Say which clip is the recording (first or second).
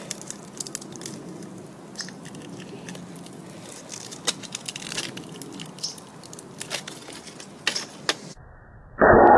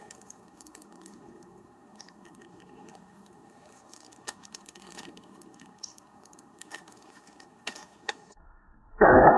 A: first